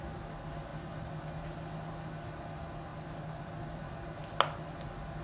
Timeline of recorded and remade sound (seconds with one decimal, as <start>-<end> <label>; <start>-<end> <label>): 0.0-5.2 recorded